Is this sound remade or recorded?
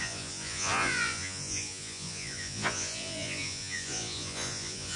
remade